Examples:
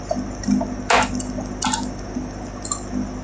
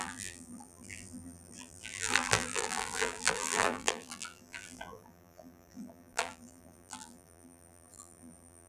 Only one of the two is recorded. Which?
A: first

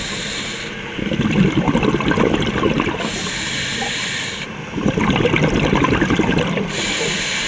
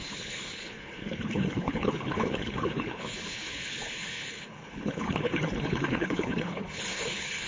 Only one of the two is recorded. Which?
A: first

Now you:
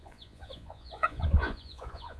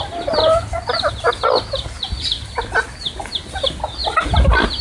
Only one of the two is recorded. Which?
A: second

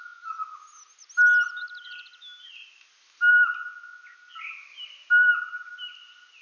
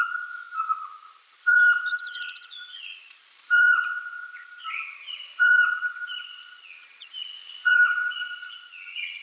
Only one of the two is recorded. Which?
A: first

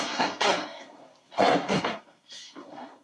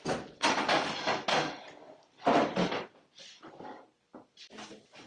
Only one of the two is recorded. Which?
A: second